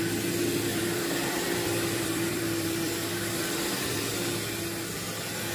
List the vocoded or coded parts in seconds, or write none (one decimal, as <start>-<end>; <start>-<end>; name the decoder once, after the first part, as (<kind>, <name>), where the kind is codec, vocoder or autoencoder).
0.7-4.0 (vocoder, BigVGAN v2)